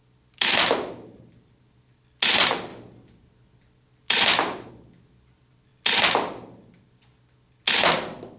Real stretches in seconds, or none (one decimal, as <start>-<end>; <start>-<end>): 0.0-8.4